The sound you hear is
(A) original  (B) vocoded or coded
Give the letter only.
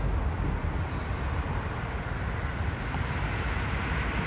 A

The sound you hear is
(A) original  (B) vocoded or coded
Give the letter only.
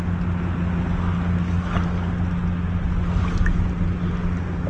A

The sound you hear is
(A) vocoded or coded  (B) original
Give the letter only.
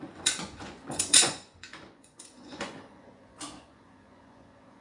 A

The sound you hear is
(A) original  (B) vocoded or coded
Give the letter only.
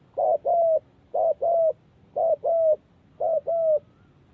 A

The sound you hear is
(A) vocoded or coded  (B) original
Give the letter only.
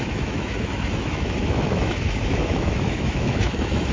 A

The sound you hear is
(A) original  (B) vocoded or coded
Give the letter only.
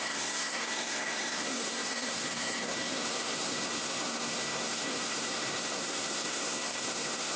B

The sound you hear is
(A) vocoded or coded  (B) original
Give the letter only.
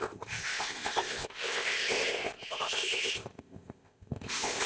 A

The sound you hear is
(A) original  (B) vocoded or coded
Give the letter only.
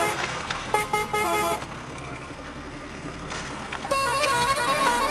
B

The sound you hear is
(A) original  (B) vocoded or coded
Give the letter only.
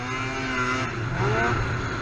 A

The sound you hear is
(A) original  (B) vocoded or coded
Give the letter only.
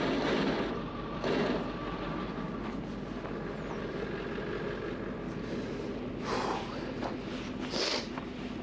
A